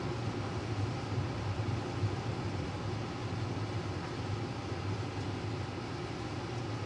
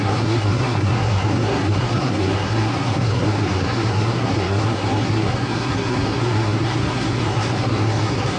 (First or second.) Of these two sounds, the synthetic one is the second